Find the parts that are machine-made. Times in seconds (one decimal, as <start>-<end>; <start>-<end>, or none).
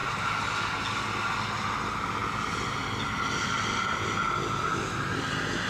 none